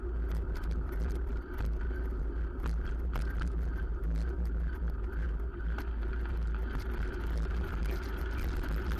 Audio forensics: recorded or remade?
recorded